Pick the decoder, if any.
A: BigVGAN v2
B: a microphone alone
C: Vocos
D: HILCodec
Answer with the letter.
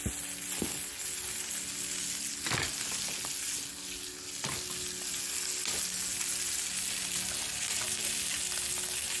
B